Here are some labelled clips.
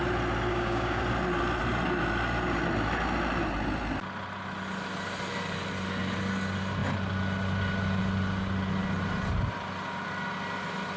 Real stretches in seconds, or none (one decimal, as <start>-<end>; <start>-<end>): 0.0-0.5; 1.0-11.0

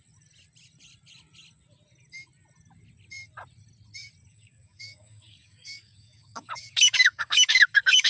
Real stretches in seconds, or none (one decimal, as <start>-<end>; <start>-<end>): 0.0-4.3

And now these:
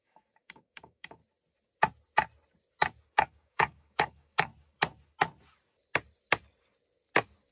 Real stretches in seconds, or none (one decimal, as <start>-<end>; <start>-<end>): 1.2-3.1; 4.5-7.5

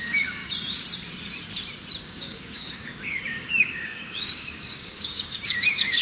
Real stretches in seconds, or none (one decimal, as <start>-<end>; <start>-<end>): 0.4-2.0

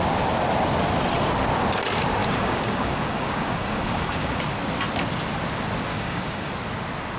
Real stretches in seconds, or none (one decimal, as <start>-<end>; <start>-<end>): 0.0-2.2; 4.4-5.9; 6.5-7.2

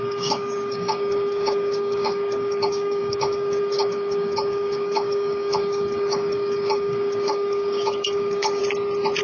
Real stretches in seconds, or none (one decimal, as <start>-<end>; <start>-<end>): 8.6-9.2

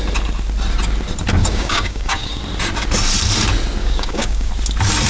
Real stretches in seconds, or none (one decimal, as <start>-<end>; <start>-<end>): 0.0-1.4; 2.4-3.8; 4.5-5.1

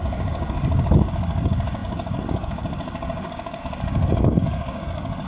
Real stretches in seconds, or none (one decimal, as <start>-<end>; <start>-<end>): none